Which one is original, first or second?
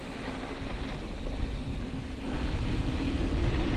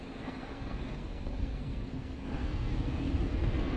first